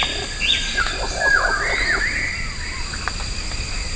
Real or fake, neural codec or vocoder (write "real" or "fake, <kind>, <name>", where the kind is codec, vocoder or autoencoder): real